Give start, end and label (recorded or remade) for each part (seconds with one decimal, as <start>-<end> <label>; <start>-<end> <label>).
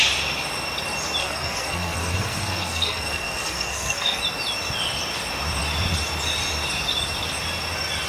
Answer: 0.0-1.2 recorded; 1.2-4.2 remade; 4.2-8.1 recorded